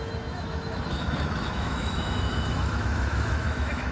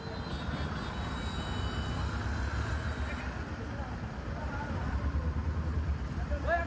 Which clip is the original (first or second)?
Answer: second